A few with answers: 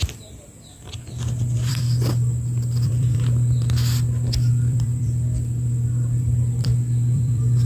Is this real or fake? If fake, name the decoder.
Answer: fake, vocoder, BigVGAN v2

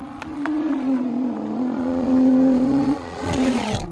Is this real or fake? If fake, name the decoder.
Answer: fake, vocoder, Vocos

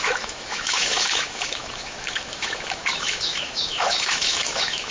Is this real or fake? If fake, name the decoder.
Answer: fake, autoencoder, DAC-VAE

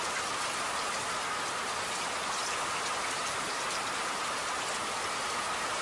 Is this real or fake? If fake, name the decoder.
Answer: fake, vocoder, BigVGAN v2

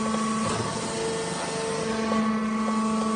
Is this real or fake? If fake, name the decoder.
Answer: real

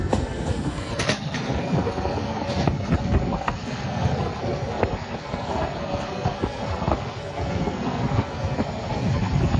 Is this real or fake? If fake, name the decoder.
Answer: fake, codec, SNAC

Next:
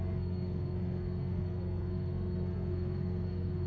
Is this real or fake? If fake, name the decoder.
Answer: fake, codec, SNAC